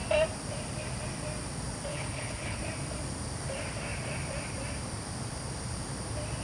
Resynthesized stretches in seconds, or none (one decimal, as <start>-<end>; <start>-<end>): 1.9-2.6